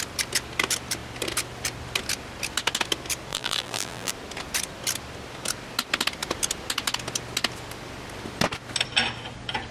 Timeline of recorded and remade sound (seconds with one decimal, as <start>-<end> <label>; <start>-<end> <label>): 0.0-3.3 recorded; 3.3-4.1 remade; 4.1-9.7 recorded